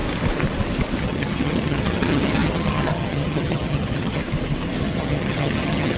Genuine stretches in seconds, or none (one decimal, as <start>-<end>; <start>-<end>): 0.0-1.0; 4.2-4.8